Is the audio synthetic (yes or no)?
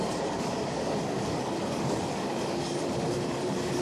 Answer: yes